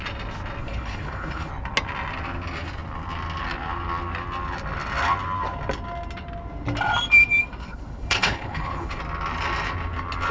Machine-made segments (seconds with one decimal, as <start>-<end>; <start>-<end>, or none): 0.6-1.5; 7.6-9.0